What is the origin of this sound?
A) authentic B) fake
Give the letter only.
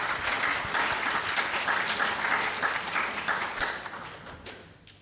A